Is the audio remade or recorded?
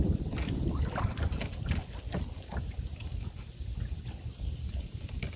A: recorded